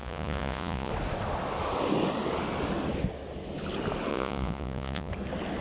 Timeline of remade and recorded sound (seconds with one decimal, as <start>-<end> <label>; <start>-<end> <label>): 0.0-0.9 remade; 0.9-4.1 recorded; 4.1-5.1 remade; 5.1-5.6 recorded